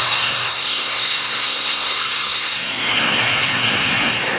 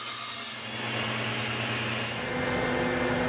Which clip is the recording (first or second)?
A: second